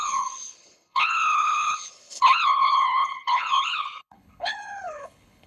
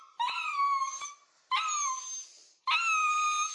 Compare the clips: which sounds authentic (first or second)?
second